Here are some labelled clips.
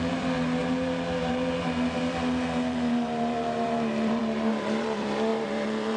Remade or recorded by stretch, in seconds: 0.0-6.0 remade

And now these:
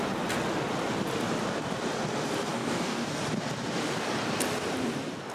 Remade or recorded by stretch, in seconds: 0.0-2.5 recorded; 2.5-3.2 remade; 3.2-5.3 recorded

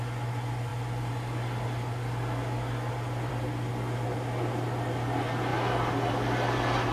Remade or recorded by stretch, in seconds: 0.0-6.9 recorded

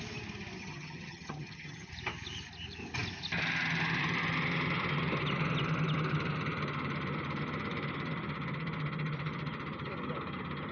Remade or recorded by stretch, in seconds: 0.0-0.6 recorded; 0.6-1.9 remade; 1.9-10.7 recorded

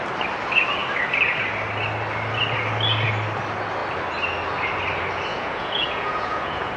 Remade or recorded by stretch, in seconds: 0.0-5.3 recorded; 5.3-6.8 remade

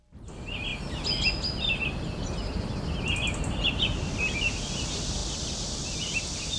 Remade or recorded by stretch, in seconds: 0.0-6.6 recorded